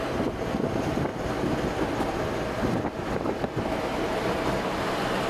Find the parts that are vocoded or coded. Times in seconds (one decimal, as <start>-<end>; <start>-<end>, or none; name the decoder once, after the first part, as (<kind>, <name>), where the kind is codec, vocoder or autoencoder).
none